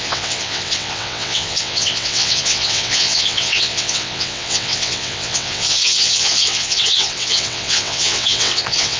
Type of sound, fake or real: fake